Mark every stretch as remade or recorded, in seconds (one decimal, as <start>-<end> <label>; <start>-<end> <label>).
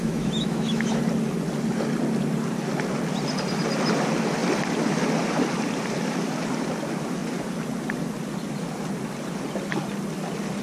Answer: 0.0-1.0 remade; 1.0-10.6 recorded